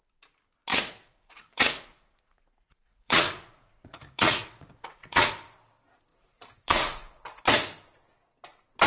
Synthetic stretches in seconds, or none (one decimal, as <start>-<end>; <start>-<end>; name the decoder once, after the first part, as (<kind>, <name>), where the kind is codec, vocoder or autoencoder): 0.7-5.3 (vocoder, Vocos); 6.1-7.4